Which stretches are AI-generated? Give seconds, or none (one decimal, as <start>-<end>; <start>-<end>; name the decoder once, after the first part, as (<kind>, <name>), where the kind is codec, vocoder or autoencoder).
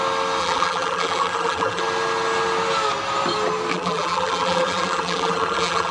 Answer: 0.4-1.8 (vocoder, BigVGAN v2); 3.7-5.9